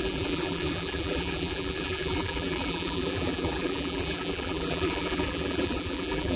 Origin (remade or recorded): remade